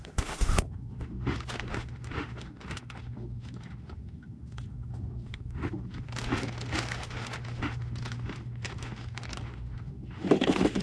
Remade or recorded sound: remade